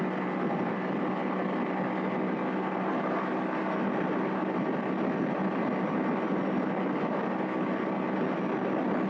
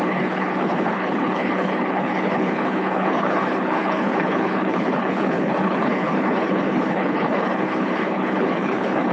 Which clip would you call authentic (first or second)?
first